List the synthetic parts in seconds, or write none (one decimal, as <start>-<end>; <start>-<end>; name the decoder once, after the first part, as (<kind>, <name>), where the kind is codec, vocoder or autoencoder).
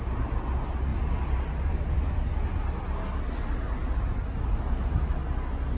none